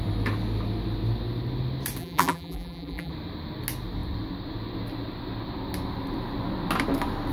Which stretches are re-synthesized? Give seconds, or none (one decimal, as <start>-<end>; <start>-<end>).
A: 2.0-3.1